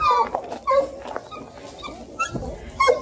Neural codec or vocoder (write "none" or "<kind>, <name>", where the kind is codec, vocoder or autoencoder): none